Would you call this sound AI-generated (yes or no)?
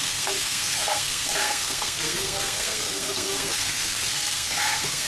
yes